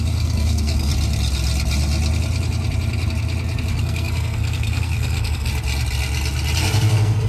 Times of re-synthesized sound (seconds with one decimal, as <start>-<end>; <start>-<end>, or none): 0.0-0.9; 3.7-5.5; 6.6-7.3